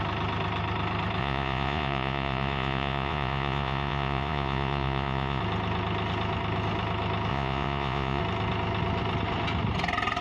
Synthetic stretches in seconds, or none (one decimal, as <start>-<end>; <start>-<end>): 1.2-5.4; 7.3-8.2